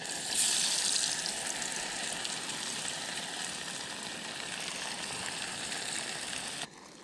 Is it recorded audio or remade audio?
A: remade